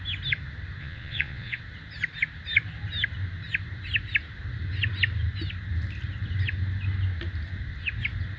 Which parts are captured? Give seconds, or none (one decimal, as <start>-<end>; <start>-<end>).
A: 0.0-0.8; 1.6-8.4